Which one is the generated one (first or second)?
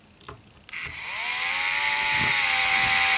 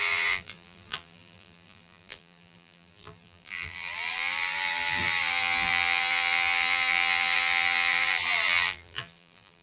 second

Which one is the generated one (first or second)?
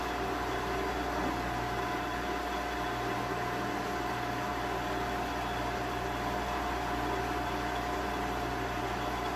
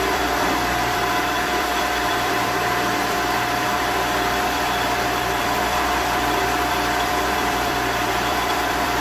second